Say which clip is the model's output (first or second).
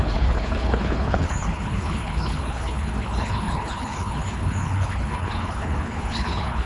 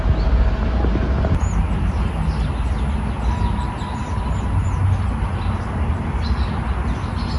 first